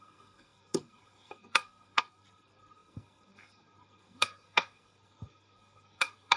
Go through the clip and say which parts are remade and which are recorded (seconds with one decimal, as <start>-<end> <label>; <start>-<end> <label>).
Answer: 0.0-6.4 remade